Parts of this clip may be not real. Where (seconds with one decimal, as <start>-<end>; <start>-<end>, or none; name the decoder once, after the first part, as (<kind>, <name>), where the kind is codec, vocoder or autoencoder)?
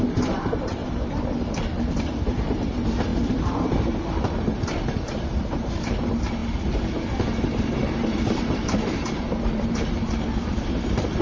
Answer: 0.0-0.8 (vocoder, BigVGAN v2); 1.6-3.1; 4.3-11.2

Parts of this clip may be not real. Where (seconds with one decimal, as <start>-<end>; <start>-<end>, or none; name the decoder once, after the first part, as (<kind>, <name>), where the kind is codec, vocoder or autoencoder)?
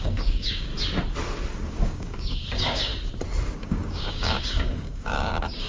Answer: 0.0-0.7 (codec, DAC); 1.7-2.9; 3.6-5.7